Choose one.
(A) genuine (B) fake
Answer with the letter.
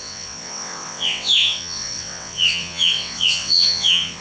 B